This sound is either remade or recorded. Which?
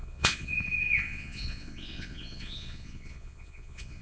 remade